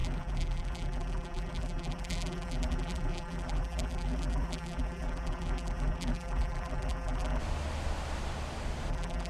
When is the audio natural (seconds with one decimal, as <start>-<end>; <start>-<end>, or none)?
7.4-8.9